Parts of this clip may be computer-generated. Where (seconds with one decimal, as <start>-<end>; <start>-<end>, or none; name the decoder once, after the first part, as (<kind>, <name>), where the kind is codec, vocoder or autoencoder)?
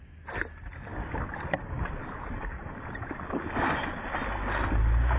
none